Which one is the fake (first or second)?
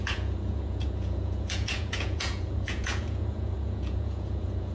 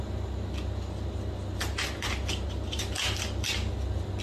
first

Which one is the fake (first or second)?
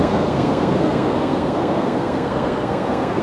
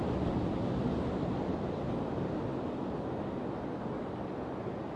first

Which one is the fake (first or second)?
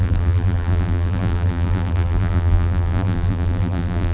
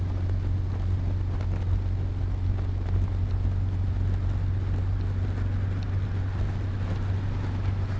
first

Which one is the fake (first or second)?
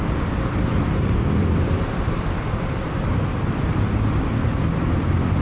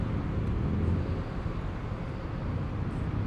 first